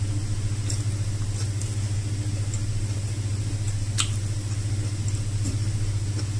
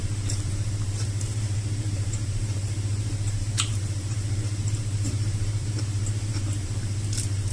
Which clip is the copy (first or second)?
second